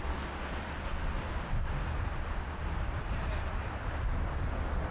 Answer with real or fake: real